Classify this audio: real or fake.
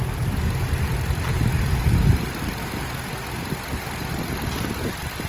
real